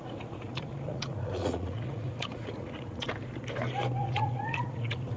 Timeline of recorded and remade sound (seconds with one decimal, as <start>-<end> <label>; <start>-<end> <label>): 0.0-3.1 remade; 3.1-4.0 recorded; 4.0-5.2 remade